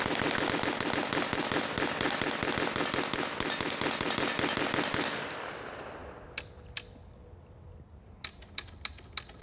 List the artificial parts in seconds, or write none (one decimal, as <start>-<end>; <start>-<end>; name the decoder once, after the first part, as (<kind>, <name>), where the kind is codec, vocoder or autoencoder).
none